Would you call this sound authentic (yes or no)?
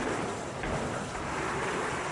yes